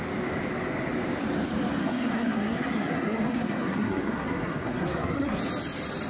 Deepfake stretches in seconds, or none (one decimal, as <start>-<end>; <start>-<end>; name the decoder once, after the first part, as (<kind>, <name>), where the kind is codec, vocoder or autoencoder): 1.8-5.4 (codec, SNAC)